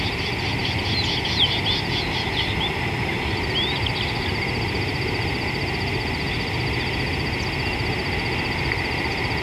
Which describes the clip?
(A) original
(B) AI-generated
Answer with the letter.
A